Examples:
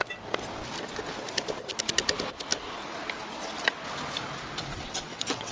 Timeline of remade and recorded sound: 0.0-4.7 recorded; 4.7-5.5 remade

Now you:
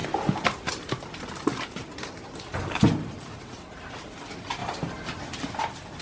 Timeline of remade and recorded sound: 0.0-6.0 recorded

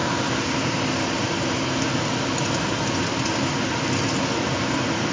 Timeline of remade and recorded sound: 0.0-5.1 recorded

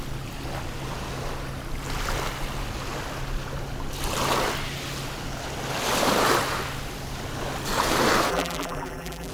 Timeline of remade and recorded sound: 0.0-8.3 recorded; 8.3-9.3 remade